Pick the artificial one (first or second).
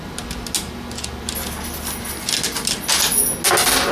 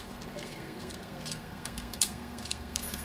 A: second